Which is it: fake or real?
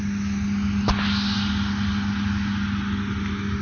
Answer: real